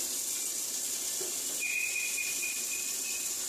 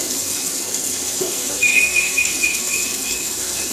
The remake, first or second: second